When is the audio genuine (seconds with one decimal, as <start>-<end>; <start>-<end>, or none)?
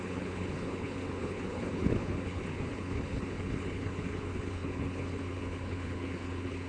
none